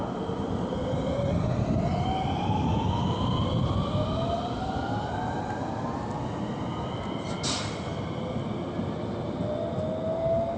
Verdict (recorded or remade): recorded